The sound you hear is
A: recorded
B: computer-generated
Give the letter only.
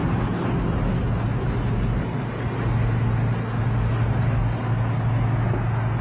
A